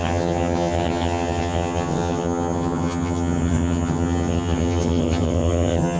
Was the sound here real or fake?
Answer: fake